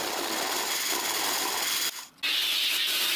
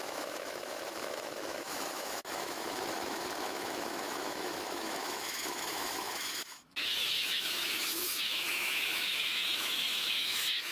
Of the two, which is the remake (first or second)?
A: second